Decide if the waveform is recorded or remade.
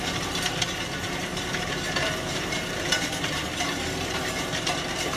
remade